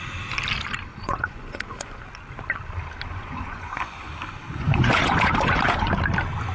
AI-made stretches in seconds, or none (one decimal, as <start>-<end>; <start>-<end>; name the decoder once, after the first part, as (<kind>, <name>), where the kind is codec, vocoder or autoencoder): 0.9-2.0 (vocoder, Vocos); 3.1-4.1; 4.5-5.9